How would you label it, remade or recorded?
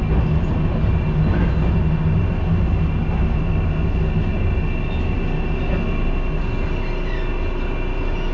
recorded